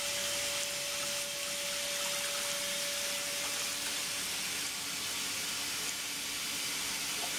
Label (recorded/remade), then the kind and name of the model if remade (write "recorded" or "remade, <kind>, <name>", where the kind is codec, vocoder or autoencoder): recorded